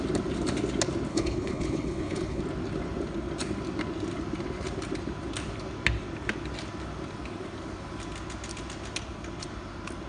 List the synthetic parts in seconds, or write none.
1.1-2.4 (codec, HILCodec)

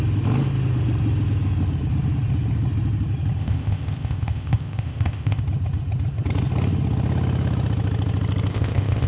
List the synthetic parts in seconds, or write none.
3.4-5.4 (codec, ZipCodec); 8.5-9.1